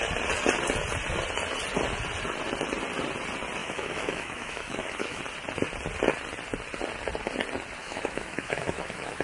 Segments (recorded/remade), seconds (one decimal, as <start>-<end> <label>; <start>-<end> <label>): 0.0-3.6 recorded; 3.6-5.2 remade; 5.2-7.8 recorded; 7.8-9.2 remade